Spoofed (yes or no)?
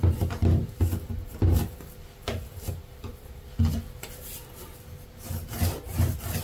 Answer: no